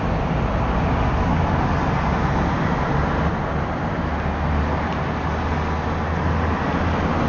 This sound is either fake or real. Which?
real